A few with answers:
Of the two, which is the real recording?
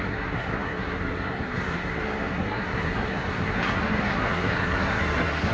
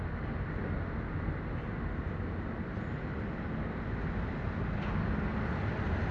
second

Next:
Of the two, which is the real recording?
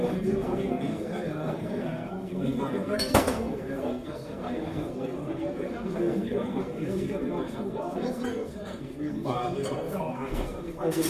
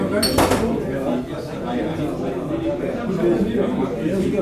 second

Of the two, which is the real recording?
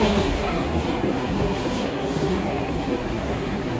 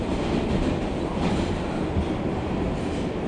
second